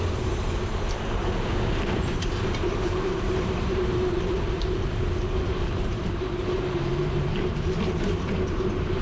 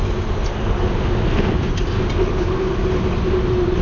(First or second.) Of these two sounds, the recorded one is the second